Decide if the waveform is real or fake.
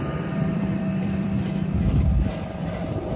fake